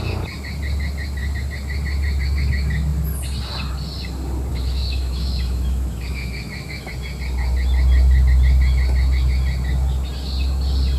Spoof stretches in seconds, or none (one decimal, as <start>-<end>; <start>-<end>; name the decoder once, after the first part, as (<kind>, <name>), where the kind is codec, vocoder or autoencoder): 4.5-6.9 (autoencoder, DAC-VAE)